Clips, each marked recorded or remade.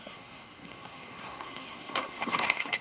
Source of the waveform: remade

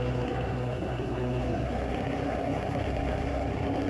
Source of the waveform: remade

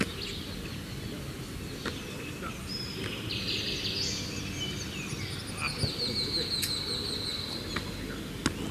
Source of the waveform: recorded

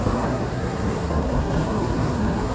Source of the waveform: remade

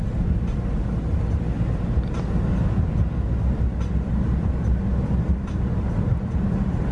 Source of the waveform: recorded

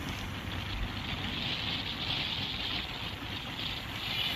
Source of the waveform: recorded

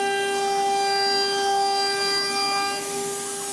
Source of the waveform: recorded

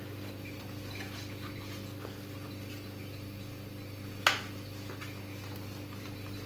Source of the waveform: recorded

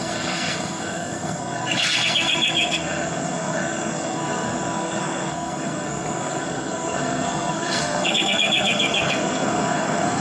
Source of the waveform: remade